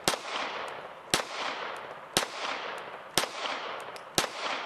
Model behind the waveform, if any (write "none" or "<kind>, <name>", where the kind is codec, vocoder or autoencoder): none